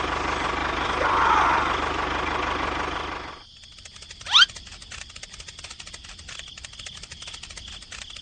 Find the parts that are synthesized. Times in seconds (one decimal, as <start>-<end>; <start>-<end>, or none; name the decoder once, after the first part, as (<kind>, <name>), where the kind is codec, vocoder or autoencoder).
0.6-1.8 (vocoder, BigVGAN v2)